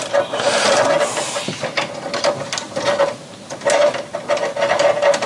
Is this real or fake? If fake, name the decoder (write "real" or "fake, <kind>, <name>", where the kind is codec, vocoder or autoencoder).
real